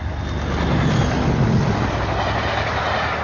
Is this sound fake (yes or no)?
no